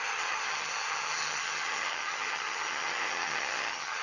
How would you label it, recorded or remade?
remade